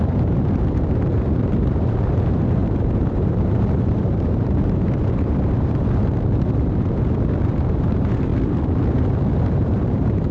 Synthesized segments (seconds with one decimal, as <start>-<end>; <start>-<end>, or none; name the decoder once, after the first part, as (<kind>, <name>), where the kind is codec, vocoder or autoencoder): 0.0-8.3 (vocoder, BigVGAN v2); 9.5-10.3